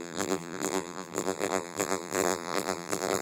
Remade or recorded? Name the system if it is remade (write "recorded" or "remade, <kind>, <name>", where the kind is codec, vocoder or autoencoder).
remade, vocoder, BigVGAN v2